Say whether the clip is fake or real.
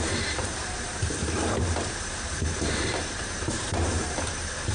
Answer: fake